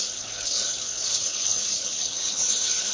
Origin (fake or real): fake